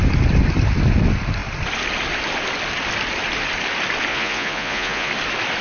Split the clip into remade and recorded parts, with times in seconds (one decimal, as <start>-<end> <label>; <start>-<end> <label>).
0.0-4.1 recorded; 4.1-5.1 remade; 5.1-5.6 recorded

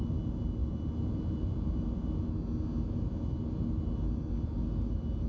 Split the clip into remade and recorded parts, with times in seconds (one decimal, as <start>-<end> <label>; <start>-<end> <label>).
0.0-5.3 recorded

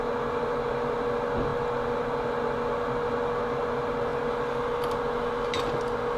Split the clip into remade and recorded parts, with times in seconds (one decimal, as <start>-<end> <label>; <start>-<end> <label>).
0.0-6.2 recorded